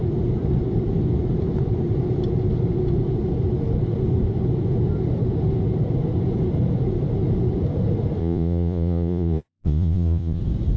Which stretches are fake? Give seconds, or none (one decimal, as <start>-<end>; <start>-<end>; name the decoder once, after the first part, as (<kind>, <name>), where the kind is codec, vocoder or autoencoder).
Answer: 8.2-10.4 (vocoder, Vocos)